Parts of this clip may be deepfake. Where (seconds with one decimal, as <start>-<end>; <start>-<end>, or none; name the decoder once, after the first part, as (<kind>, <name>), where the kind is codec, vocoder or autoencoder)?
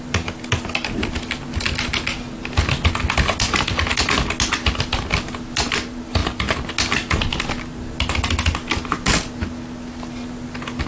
none